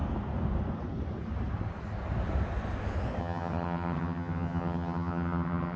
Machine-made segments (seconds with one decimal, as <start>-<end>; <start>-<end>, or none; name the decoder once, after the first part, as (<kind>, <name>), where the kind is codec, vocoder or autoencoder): 3.2-5.8 (vocoder, HiFi-GAN)